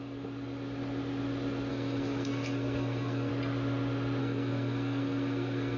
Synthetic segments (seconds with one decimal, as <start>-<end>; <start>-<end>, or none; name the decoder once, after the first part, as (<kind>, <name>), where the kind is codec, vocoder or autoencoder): 1.7-3.3 (codec, SNAC); 4.2-5.8